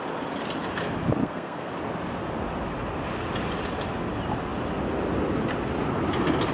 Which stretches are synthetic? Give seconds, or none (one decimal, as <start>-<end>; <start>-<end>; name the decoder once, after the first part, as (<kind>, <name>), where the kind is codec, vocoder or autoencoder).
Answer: 1.2-1.7 (codec, SNAC)